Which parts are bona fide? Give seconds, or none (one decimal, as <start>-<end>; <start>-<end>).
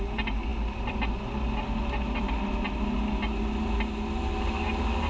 0.0-5.1